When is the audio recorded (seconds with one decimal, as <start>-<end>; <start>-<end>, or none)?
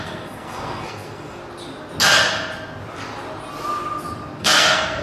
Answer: 1.4-4.4